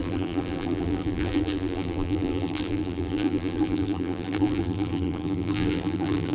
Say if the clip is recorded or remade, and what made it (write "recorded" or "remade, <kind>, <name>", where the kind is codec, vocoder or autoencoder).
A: remade, vocoder, BigVGAN v2